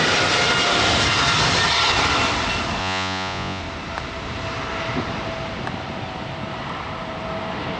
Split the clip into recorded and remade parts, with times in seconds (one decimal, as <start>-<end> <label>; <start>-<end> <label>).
0.0-2.8 recorded; 2.8-3.6 remade; 3.6-7.8 recorded